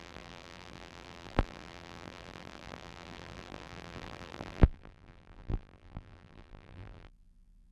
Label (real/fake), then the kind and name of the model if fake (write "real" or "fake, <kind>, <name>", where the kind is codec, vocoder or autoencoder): fake, vocoder, BigVGAN v2